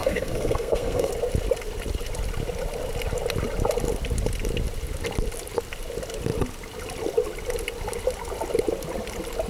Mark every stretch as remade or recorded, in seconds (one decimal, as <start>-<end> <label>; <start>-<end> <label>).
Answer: 0.0-1.1 remade; 1.1-9.5 recorded